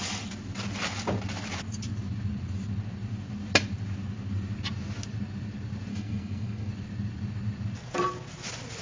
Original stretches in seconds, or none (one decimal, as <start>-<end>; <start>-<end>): 0.0-5.9; 6.7-8.8